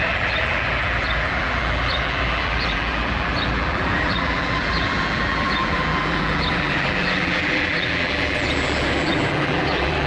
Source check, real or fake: fake